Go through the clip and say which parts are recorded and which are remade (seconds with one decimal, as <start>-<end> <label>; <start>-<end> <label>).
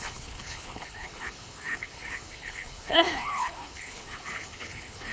0.0-5.1 remade